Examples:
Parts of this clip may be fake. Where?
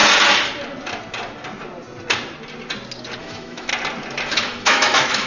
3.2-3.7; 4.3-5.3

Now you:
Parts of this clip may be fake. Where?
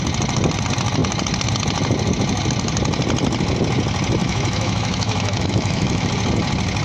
4.2-6.1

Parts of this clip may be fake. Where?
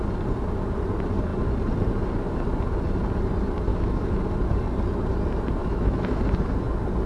3.7-4.2; 5.6-6.2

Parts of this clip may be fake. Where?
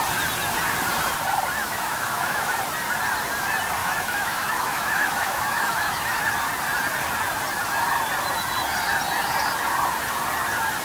1.6-2.5; 3.8-6.3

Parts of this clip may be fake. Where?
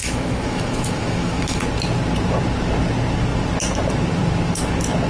0.0-1.6